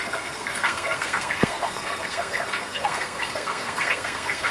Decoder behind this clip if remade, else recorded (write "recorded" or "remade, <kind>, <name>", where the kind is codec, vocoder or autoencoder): remade, codec, SNAC